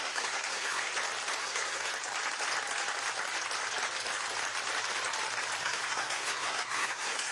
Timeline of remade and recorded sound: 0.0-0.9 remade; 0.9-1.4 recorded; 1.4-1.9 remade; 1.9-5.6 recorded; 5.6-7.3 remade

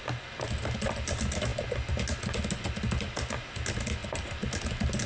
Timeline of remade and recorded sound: 0.0-5.1 recorded